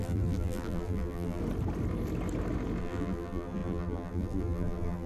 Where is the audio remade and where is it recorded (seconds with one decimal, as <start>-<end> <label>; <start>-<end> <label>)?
0.0-1.4 remade; 1.4-2.8 recorded; 2.8-5.1 remade

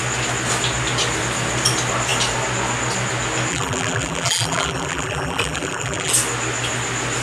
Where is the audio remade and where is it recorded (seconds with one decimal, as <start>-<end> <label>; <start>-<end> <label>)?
0.0-3.5 recorded; 3.5-6.1 remade; 6.1-7.2 recorded

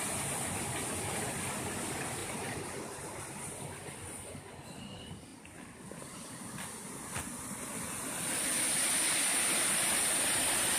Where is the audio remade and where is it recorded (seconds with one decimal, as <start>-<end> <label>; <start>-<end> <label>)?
0.0-2.2 recorded; 2.2-3.3 remade; 3.3-10.8 recorded

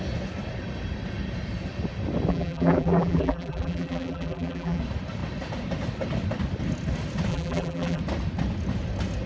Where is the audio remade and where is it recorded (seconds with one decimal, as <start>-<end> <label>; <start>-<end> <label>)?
0.0-2.3 recorded; 2.3-4.8 remade; 4.8-7.3 recorded; 7.3-8.0 remade; 8.0-9.3 recorded